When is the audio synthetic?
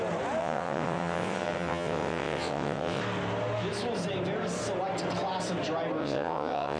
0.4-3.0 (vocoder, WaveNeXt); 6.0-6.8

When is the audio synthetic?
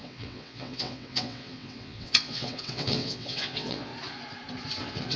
0.0-3.9 (vocoder, WaveNeXt); 4.8-5.2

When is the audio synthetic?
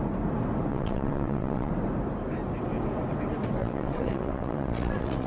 0.7-1.7 (vocoder, WaveNeXt); 3.6-5.3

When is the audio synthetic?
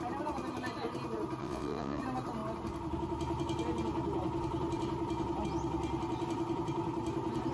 1.4-2.0 (vocoder, WaveNeXt)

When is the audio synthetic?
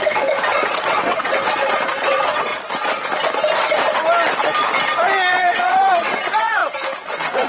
0.0-2.5 (vocoder, WaveNeXt); 5.3-6.6; 7.1-7.5